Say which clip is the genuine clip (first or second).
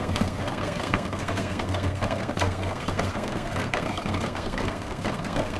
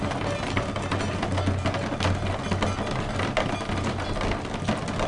second